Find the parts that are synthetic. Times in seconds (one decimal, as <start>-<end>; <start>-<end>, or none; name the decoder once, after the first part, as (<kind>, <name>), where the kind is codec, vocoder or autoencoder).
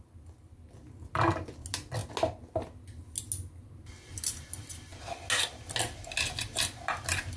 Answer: none